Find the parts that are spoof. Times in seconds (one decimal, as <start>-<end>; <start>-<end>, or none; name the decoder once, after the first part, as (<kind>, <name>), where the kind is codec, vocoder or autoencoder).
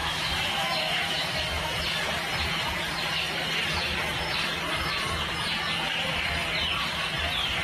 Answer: 0.0-1.7 (autoencoder, DAC-VAE)